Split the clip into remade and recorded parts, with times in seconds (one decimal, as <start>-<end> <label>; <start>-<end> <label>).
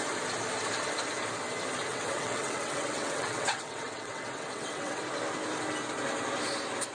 0.0-1.9 recorded; 1.9-5.0 remade; 5.0-6.9 recorded